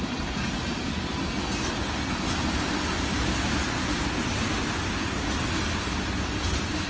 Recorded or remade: recorded